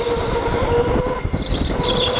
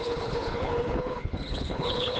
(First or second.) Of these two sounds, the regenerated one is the second